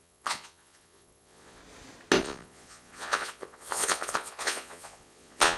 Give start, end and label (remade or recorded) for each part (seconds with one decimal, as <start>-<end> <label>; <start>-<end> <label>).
0.0-1.6 remade; 1.6-2.2 recorded; 2.2-5.6 remade